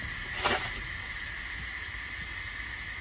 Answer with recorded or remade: recorded